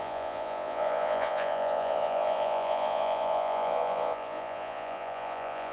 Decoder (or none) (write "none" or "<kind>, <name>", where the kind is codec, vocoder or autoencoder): vocoder, Vocos